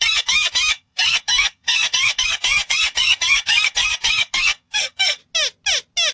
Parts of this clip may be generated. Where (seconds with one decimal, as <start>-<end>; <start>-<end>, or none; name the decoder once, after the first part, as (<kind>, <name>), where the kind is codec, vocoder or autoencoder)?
0.0-5.2 (codec, SNAC)